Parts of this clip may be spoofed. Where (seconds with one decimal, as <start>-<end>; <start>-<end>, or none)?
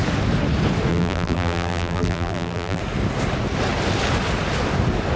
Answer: 0.9-2.8